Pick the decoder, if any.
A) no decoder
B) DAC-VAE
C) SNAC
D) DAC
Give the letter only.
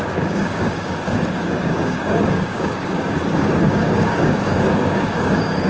D